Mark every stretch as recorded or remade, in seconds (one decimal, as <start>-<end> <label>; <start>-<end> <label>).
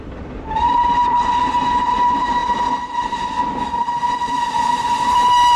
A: 0.0-5.6 remade